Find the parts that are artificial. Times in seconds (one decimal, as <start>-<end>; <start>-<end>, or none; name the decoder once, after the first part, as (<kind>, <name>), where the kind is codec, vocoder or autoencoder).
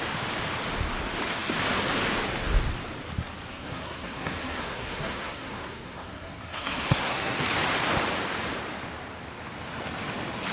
3.5-7.4 (codec, SNAC)